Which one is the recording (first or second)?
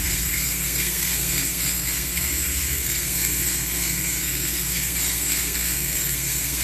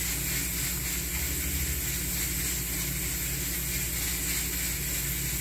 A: second